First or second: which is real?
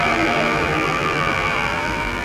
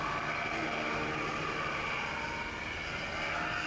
second